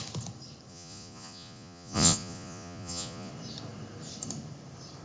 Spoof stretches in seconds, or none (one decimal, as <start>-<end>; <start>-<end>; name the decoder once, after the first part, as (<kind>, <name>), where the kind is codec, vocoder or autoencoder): 0.7-3.3 (vocoder, Vocos)